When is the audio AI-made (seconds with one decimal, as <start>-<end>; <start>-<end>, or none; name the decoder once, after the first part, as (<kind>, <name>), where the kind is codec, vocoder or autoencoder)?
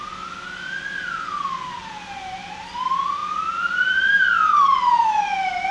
none